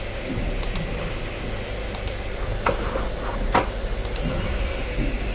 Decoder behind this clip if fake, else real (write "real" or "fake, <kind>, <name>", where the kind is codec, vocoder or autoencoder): real